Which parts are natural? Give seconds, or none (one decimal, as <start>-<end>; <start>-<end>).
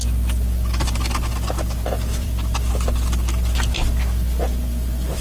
0.0-2.1; 2.7-5.2